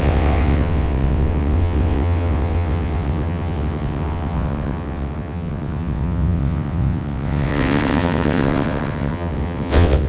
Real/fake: fake